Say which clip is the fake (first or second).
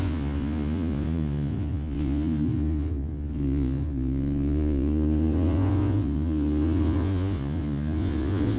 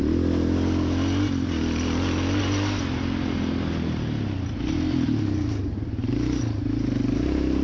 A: first